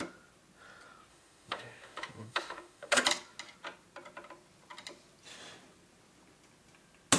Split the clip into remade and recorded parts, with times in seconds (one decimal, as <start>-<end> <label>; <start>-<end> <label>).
0.0-1.1 recorded; 1.1-3.0 remade; 3.0-7.2 recorded